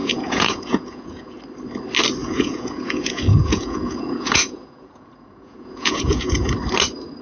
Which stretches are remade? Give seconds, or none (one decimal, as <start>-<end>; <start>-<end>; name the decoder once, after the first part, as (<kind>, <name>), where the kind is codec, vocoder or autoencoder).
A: 0.0-1.4 (vocoder, Vocos); 2.2-6.5

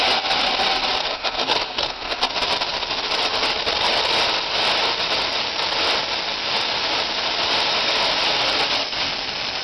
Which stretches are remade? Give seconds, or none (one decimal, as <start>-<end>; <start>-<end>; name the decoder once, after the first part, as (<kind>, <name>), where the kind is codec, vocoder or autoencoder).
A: 1.0-2.3 (codec, SNAC)

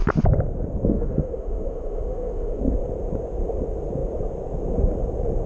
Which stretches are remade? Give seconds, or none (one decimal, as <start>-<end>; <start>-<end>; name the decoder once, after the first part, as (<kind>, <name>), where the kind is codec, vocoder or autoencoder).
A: 0.9-2.6 (autoencoder, DAC-VAE)

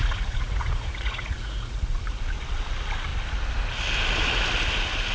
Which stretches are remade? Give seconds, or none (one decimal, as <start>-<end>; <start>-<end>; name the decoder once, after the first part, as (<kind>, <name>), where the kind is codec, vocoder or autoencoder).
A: 0.0-1.8 (vocoder, Vocos)

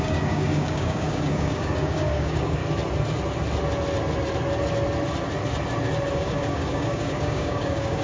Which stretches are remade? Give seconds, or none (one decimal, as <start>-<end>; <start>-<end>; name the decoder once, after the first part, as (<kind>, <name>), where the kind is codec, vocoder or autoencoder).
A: 0.0-2.6 (codec, DAC); 6.1-8.0

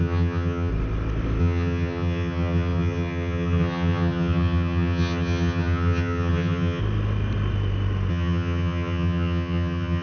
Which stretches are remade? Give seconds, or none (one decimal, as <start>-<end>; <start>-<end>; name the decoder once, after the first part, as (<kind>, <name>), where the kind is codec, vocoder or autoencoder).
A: 0.0-0.7 (vocoder, HiFi-GAN); 1.4-6.8; 8.1-10.0

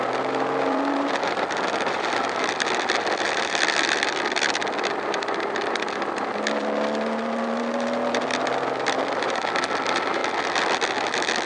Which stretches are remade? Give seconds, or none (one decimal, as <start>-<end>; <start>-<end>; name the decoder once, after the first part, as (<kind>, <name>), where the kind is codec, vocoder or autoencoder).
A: 0.0-10.2 (vocoder, BigVGAN v2)

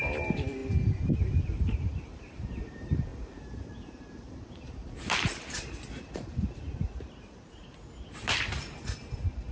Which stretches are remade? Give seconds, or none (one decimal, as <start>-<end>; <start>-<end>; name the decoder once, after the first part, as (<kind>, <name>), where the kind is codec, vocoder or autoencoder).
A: 0.0-9.5 (vocoder, BigVGAN v2)